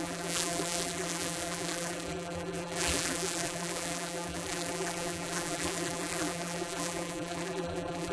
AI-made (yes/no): yes